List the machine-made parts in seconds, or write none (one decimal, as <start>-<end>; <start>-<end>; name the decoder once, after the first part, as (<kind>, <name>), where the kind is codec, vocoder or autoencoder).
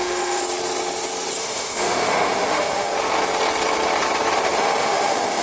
0.0-0.4 (autoencoder, DAC-VAE); 1.4-2.9; 4.6-5.4